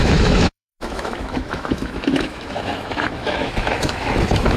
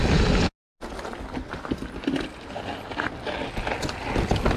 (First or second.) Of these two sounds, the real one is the second